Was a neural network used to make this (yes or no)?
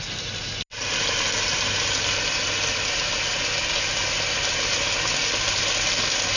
no